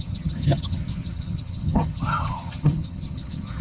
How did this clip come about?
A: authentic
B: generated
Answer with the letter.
B